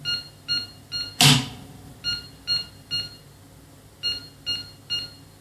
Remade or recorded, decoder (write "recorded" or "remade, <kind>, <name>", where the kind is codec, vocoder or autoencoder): recorded